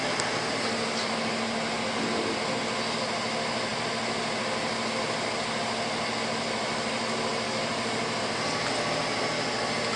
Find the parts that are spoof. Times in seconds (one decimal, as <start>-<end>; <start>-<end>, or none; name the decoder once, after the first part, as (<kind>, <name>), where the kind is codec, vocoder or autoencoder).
none